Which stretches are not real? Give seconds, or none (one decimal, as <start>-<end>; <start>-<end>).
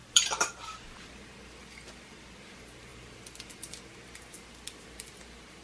0.0-1.2; 1.6-2.3; 2.9-3.5